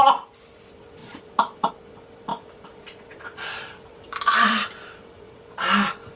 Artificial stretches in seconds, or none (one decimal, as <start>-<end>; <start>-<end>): 1.0-1.7; 2.3-5.6